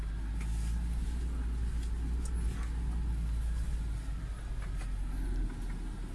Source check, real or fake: real